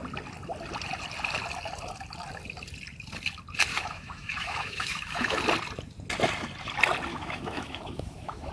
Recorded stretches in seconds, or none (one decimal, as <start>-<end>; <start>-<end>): 0.0-3.7; 5.4-7.1